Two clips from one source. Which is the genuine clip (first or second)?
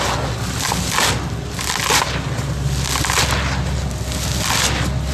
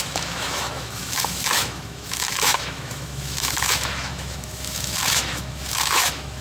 first